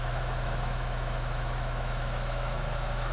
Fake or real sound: fake